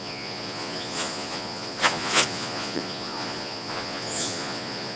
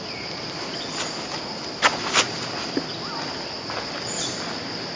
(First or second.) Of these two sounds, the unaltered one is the second